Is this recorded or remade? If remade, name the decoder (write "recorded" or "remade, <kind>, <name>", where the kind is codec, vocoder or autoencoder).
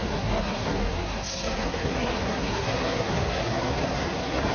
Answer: remade, codec, SNAC